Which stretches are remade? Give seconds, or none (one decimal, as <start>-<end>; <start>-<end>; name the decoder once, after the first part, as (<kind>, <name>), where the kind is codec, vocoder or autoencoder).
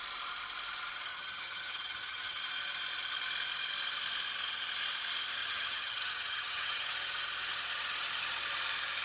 1.1-2.4 (vocoder, HiFi-GAN); 5.4-6.9